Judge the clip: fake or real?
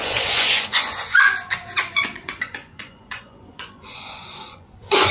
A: fake